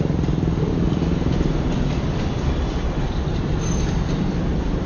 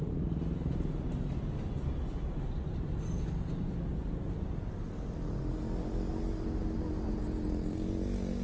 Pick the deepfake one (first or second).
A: first